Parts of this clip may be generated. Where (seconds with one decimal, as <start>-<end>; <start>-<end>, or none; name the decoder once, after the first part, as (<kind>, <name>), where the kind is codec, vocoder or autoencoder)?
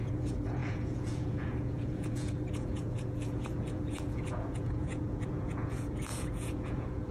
0.0-7.1 (vocoder, Vocos)